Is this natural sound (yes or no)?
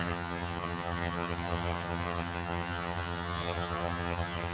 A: no